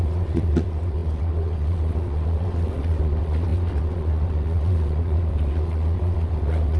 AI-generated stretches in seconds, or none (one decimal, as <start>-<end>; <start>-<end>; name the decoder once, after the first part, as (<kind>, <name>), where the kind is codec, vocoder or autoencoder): 0.0-6.8 (vocoder, WaveNeXt)